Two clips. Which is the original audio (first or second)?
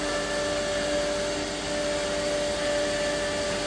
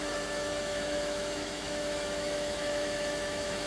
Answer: first